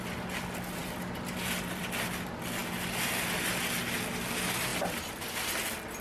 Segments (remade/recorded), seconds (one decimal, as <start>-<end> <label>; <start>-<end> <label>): 0.0-4.7 recorded; 4.7-5.4 remade; 5.4-6.0 recorded

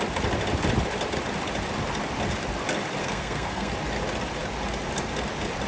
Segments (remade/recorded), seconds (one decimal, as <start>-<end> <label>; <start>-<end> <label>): 0.0-3.0 recorded; 3.0-3.7 remade; 3.7-5.7 recorded